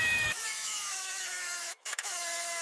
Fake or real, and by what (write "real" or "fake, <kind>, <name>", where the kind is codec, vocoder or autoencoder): fake, autoencoder, DAC-VAE